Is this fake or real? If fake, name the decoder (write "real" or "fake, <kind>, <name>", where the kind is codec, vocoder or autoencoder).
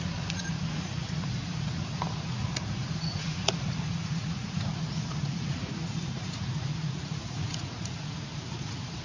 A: fake, vocoder, Vocos